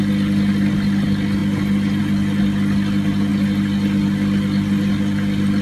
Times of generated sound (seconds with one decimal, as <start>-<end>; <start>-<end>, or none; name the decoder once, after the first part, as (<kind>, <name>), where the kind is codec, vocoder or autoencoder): none